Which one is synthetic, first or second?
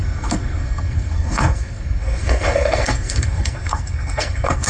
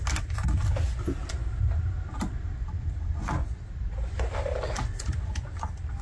first